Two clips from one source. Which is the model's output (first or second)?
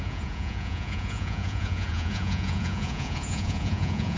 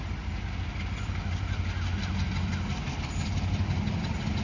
first